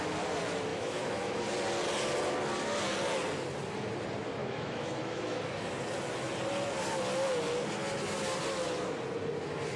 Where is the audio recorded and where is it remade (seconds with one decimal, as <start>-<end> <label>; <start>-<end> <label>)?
0.0-0.7 recorded; 0.7-1.4 remade; 1.4-4.4 recorded; 4.4-5.5 remade; 5.5-9.8 recorded